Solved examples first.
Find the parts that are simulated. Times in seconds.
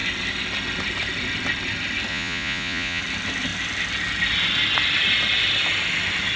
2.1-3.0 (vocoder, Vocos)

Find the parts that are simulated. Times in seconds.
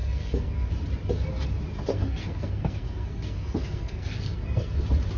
0.0-0.7 (codec, SNAC); 1.9-4.8